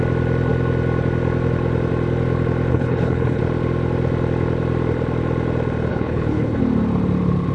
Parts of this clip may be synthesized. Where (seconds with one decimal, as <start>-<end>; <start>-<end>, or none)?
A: 2.7-3.4; 5.9-6.6